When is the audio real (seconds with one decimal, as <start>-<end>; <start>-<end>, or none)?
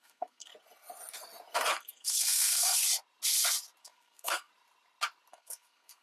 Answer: 0.5-1.8; 2.8-3.8; 4.5-5.3